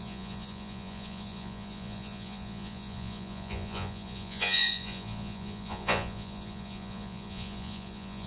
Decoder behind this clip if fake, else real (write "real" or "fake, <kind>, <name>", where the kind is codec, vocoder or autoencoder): fake, vocoder, Vocos